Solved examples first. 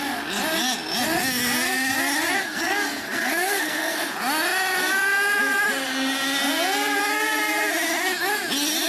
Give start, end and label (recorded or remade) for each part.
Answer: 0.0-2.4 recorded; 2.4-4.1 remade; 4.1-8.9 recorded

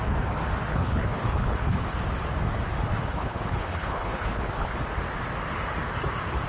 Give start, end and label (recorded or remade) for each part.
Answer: 0.0-0.7 recorded; 0.7-2.0 remade; 2.0-2.9 recorded; 2.9-4.8 remade; 4.8-6.5 recorded

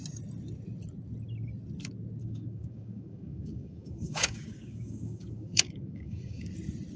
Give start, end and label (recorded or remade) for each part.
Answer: 0.0-2.2 recorded; 2.2-6.4 remade; 6.4-7.0 recorded

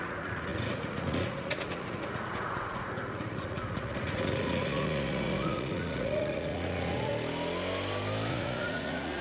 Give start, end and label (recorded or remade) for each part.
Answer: 0.0-7.1 remade; 7.1-8.3 recorded; 8.3-9.2 remade

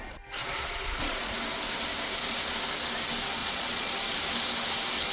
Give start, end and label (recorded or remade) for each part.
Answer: 0.0-0.4 recorded; 0.4-1.3 remade; 1.3-3.4 recorded; 3.4-3.9 remade; 3.9-5.1 recorded

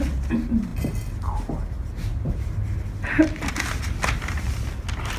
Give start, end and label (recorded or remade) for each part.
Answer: 0.0-5.2 recorded

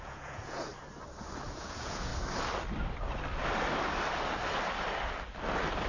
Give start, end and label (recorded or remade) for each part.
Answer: 0.0-0.7 remade; 0.7-1.5 recorded; 1.5-2.1 remade; 2.1-5.9 recorded

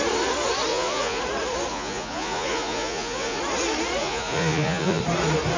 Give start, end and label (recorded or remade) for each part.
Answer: 0.0-0.7 recorded; 0.7-1.2 remade; 1.2-1.7 recorded; 1.7-3.4 remade; 3.4-4.0 recorded; 4.0-5.0 remade; 5.0-5.6 recorded